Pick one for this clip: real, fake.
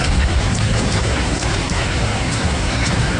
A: fake